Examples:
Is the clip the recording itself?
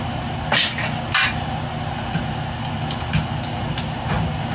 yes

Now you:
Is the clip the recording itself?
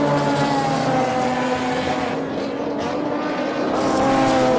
yes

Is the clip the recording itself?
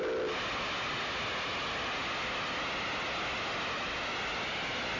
yes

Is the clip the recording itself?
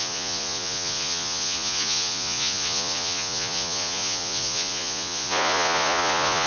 no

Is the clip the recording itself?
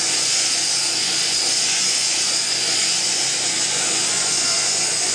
no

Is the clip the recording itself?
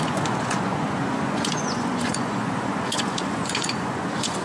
no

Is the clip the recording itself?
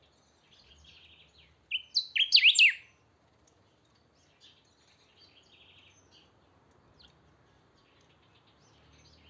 yes